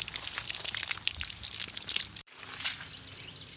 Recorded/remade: recorded